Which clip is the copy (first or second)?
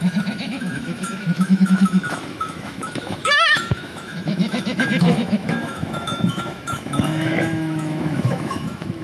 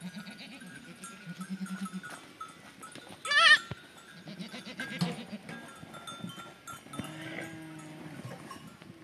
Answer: first